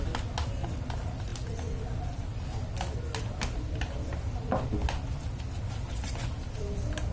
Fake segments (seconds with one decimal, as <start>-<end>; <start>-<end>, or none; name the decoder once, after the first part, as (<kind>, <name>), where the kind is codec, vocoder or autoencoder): none